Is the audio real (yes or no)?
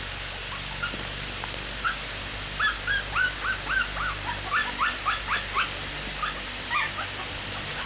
yes